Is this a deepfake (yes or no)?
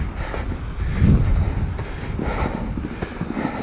no